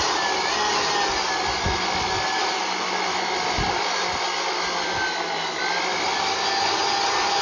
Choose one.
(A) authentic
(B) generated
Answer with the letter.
A